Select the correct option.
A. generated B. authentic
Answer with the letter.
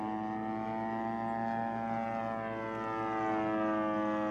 B